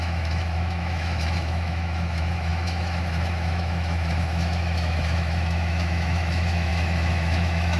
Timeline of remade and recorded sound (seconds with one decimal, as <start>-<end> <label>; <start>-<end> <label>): 0.0-7.8 remade